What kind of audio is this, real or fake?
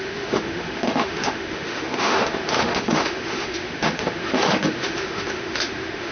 fake